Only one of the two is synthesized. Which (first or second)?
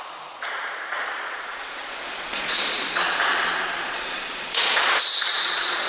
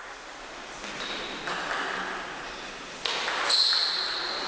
first